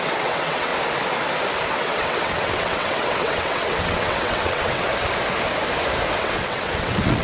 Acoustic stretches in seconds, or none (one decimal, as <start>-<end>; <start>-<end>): 0.7-1.7; 4.9-6.2